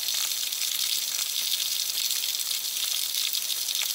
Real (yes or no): yes